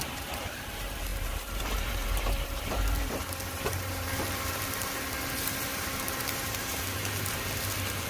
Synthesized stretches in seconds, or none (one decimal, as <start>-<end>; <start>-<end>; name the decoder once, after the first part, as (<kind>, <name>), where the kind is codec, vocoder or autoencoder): 0.0-8.1 (vocoder, BigVGAN v2)